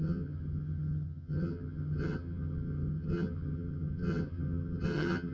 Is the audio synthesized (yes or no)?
yes